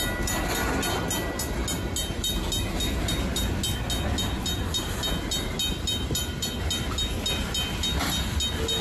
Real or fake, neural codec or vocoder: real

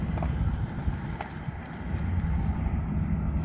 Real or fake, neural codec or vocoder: real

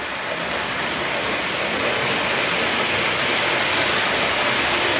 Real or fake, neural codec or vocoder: real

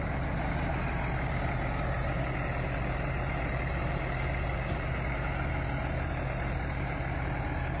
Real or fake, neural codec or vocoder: real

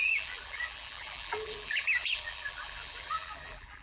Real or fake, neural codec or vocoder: fake, vocoder, BigVGAN v2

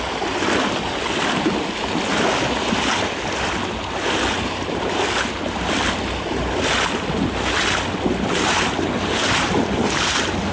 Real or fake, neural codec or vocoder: real